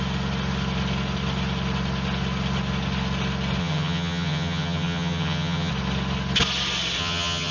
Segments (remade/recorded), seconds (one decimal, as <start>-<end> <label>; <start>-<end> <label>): 0.0-3.6 recorded; 3.6-5.7 remade; 5.7-7.0 recorded; 7.0-7.5 remade

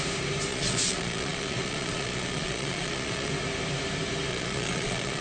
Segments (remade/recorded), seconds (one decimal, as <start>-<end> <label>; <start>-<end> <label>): 0.0-0.5 recorded; 0.5-3.3 remade; 3.3-4.3 recorded; 4.3-5.2 remade